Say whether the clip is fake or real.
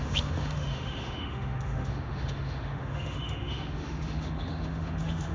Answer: fake